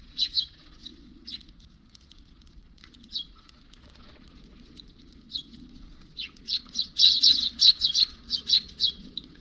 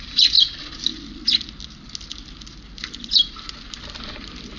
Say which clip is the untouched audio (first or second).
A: second